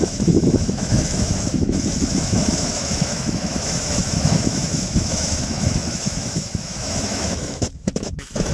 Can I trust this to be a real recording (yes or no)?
no